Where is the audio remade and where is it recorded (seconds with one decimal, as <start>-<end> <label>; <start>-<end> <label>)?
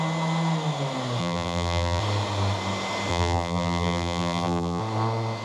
0.0-1.2 recorded; 1.2-2.0 remade; 2.0-3.1 recorded; 3.1-4.8 remade; 4.8-5.4 recorded